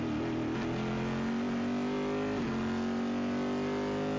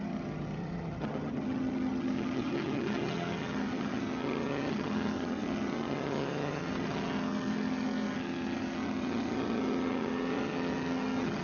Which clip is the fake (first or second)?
second